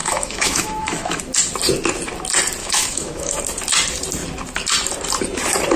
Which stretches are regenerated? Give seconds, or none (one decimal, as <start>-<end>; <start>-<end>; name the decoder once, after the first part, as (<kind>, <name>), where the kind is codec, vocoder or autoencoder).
0.0-1.2 (autoencoder, DAC-VAE); 2.6-3.4